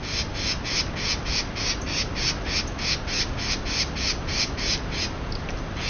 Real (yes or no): yes